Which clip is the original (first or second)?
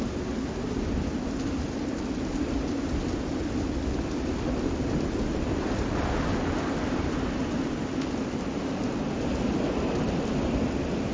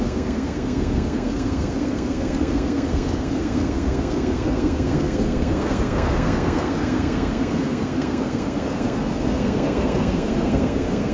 first